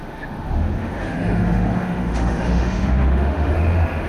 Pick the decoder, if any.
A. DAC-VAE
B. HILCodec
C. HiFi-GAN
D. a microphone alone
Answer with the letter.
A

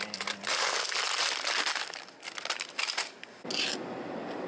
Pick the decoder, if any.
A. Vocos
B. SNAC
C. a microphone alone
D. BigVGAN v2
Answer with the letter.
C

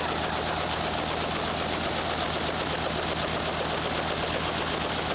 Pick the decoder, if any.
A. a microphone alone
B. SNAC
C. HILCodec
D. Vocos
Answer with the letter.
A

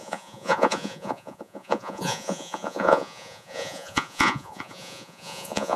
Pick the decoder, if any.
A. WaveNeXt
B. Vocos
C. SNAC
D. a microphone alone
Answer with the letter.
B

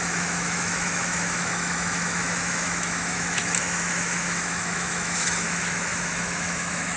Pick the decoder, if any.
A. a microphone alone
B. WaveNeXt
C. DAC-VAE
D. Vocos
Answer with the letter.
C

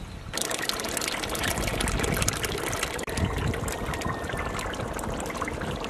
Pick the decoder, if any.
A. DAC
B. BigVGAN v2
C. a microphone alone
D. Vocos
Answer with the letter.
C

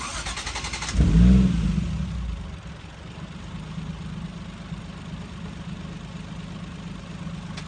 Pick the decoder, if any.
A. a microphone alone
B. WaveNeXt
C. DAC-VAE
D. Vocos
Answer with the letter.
A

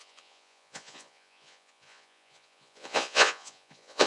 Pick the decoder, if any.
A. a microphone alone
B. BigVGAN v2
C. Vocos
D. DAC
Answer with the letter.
C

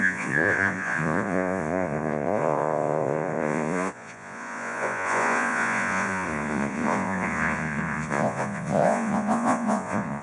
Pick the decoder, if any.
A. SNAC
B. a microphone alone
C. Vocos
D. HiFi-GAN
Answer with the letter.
C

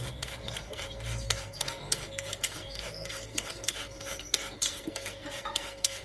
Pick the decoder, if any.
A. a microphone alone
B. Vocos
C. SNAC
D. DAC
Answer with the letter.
C